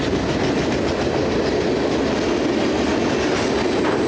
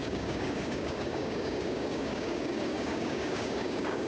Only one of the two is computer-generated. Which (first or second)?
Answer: second